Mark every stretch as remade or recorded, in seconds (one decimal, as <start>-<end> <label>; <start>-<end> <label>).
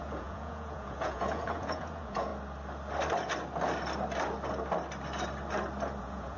0.0-2.3 remade; 2.3-6.0 recorded; 6.0-6.4 remade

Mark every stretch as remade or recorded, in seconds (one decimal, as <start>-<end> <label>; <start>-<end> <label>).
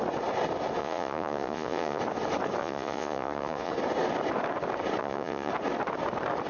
0.0-0.8 recorded; 0.8-2.0 remade; 2.0-2.6 recorded; 2.6-3.7 remade; 3.7-5.0 recorded; 5.0-5.5 remade; 5.5-6.5 recorded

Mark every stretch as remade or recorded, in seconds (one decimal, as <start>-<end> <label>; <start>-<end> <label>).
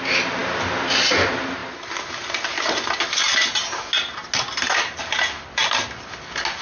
0.0-6.6 recorded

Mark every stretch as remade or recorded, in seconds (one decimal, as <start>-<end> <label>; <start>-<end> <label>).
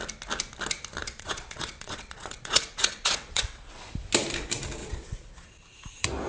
0.0-1.0 recorded; 1.0-3.7 remade; 3.7-4.8 recorded; 4.8-5.3 remade; 5.3-6.3 recorded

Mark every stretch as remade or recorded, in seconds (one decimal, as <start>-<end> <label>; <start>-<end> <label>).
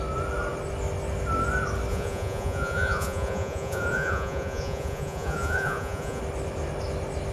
0.0-1.9 recorded; 1.9-6.2 remade; 6.2-7.3 recorded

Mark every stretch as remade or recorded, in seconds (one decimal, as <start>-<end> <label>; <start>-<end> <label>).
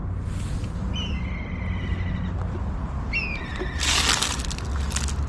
0.0-5.3 recorded